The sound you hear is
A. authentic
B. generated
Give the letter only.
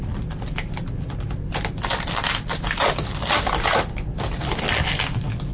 A